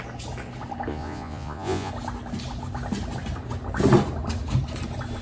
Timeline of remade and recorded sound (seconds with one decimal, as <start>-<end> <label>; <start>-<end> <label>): 0.0-0.9 recorded; 0.9-1.9 remade; 1.9-5.2 recorded